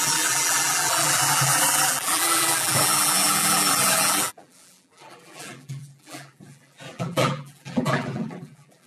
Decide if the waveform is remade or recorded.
remade